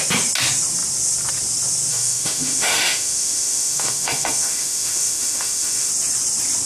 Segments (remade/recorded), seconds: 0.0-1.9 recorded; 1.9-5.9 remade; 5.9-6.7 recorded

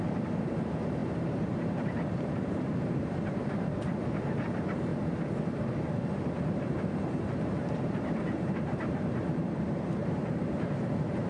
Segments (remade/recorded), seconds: 0.0-4.9 remade; 4.9-5.5 recorded; 5.5-11.3 remade

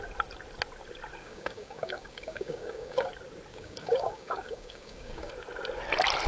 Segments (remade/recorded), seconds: 0.0-1.2 recorded; 1.2-3.1 remade; 3.1-3.5 recorded; 3.5-5.3 remade; 5.3-6.3 recorded